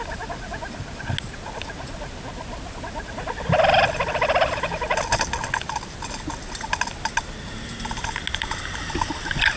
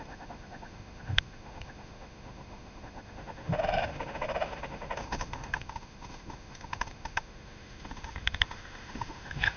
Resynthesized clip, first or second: second